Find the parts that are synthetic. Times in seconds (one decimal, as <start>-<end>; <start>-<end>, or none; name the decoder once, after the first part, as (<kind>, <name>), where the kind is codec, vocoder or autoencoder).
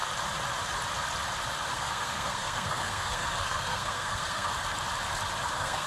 1.7-4.5 (codec, SNAC); 5.5-5.9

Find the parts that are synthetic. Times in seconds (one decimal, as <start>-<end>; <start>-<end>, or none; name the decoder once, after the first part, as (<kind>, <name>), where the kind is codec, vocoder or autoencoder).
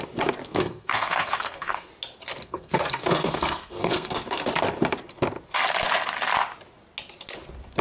0.4-1.9 (codec, SNAC); 2.4-4.5